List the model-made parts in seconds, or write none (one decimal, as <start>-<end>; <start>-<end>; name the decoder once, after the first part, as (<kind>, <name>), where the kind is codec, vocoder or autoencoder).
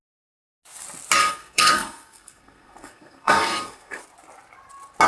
1.2-4.0 (codec, SNAC)